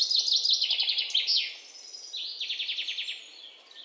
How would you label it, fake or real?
real